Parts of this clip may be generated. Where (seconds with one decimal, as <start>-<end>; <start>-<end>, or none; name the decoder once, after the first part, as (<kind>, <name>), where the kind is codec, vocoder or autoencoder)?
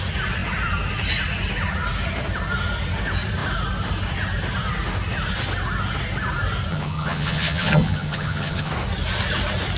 6.7-8.7 (vocoder, HiFi-GAN)